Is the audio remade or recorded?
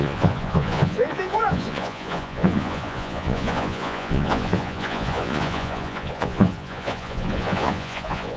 remade